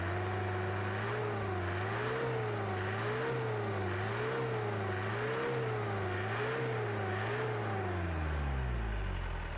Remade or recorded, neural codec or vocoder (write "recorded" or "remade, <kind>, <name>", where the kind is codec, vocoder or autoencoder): recorded